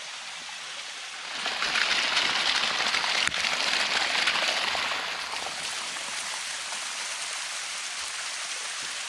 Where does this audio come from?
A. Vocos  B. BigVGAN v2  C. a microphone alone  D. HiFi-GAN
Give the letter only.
C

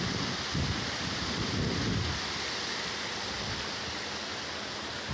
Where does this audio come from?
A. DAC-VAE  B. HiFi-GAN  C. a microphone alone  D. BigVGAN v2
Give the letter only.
C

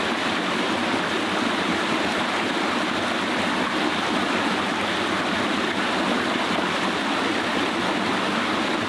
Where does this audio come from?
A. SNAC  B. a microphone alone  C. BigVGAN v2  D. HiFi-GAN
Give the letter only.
B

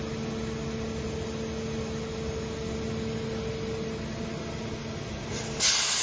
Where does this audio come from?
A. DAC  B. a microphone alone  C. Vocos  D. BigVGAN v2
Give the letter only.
B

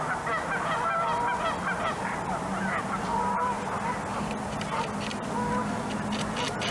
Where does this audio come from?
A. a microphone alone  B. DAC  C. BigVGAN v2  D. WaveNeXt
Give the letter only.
A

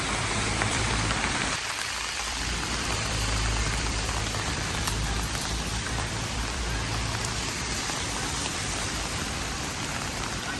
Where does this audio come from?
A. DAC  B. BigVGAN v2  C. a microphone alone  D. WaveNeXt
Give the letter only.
B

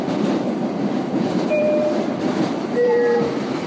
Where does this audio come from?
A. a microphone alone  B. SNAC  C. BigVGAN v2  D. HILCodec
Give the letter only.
C